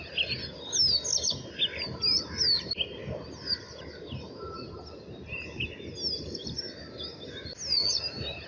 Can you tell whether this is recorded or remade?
recorded